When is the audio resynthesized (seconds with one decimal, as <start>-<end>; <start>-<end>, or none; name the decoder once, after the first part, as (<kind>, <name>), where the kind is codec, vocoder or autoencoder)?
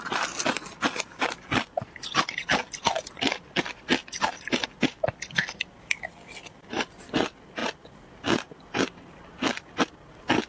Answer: 4.0-5.5 (vocoder, BigVGAN v2)